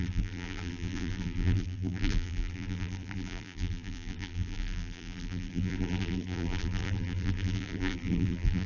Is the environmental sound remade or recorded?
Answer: remade